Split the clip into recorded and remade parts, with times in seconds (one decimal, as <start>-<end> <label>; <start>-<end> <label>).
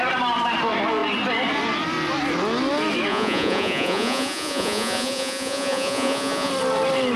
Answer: 0.0-3.1 recorded; 3.1-6.5 remade; 6.5-7.2 recorded